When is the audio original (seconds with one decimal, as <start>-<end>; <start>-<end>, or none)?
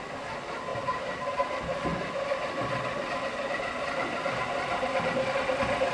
0.0-0.7; 1.5-5.9